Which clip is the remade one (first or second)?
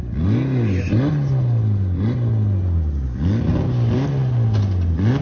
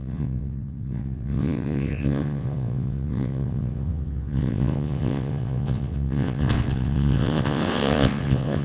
second